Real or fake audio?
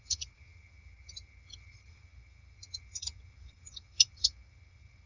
fake